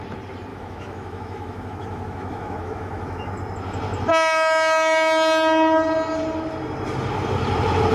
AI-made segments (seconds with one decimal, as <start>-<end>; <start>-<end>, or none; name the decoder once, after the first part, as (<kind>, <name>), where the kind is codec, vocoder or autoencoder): 0.5-3.3 (autoencoder, DAC-VAE)